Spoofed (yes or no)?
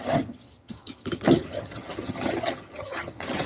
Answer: yes